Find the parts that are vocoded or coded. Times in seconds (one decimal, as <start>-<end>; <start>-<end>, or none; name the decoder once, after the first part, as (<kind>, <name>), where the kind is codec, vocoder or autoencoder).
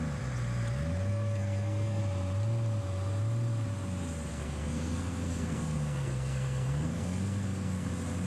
1.1-2.0 (codec, SNAC); 4.3-7.9